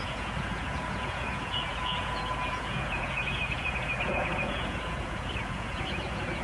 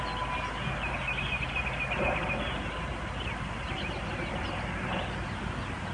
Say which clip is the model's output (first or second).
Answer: first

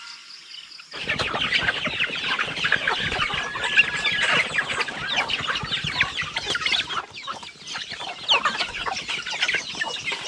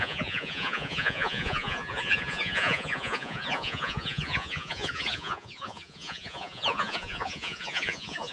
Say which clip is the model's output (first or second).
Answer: second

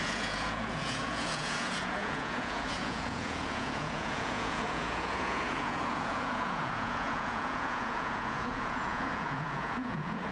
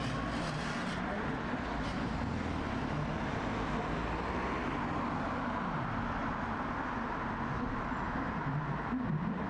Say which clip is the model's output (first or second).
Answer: first